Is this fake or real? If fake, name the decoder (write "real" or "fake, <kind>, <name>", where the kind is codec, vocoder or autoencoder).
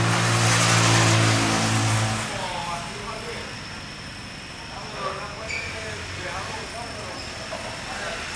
real